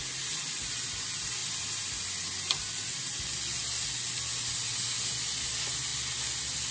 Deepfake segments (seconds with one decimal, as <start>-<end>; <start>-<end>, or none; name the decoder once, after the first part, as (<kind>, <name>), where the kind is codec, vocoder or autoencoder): none